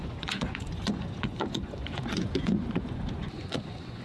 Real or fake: fake